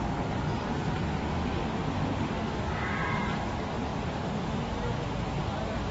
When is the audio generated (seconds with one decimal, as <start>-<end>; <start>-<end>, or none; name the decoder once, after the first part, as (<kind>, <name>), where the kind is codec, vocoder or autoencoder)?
2.1-2.6 (autoencoder, DAC-VAE)